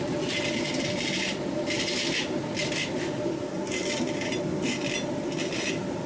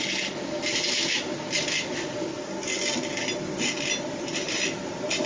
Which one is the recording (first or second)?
second